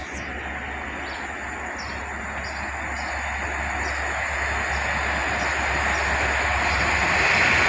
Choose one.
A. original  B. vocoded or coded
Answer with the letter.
A